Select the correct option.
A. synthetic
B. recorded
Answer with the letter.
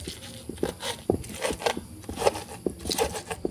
B